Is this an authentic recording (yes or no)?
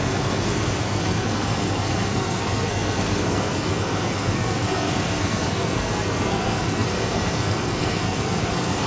no